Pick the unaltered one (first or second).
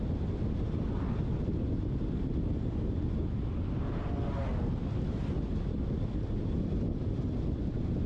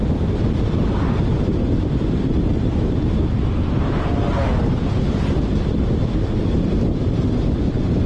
first